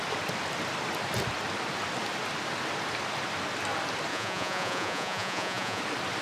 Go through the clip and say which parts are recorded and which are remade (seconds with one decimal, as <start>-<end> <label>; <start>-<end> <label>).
0.0-4.1 recorded; 4.1-5.8 remade; 5.8-6.2 recorded